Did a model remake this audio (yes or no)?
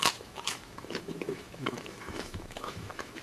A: yes